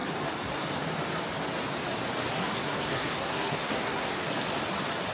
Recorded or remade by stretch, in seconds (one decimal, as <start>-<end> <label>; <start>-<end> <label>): 0.0-2.3 recorded; 2.3-4.1 remade; 4.1-5.1 recorded